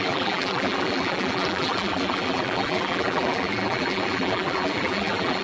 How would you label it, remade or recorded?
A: remade